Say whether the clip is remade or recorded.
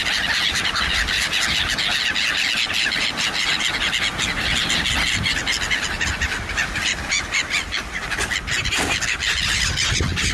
recorded